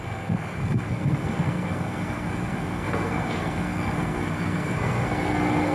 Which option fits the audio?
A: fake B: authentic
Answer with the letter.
A